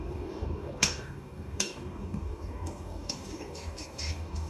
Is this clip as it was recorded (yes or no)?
no